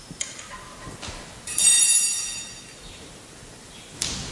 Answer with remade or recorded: recorded